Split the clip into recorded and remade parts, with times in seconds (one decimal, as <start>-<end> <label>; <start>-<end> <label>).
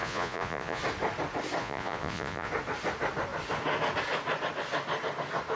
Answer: 0.0-0.8 remade; 0.8-1.6 recorded; 1.6-2.5 remade; 2.5-5.6 recorded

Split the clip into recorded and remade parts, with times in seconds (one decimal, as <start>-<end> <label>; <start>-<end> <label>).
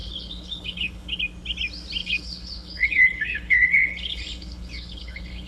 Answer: 0.0-1.2 remade; 1.2-2.0 recorded; 2.0-5.5 remade